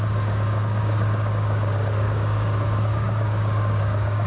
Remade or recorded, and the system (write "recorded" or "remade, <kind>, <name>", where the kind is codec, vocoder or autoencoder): remade, codec, DAC